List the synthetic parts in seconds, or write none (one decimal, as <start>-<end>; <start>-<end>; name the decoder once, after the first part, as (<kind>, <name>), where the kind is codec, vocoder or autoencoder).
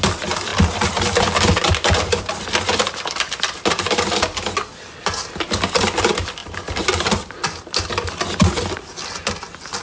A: none